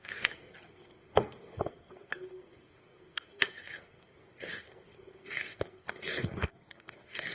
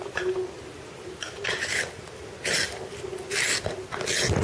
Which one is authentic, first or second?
second